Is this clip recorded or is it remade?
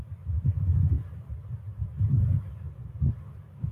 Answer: remade